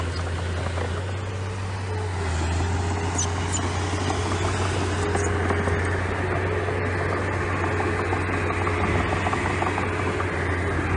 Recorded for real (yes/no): yes